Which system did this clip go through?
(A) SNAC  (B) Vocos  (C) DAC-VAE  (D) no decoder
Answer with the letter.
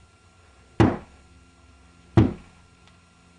D